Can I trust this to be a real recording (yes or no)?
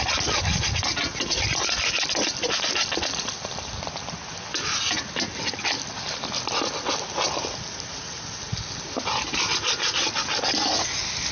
yes